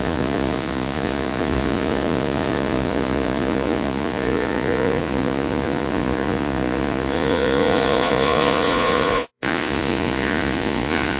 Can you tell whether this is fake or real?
fake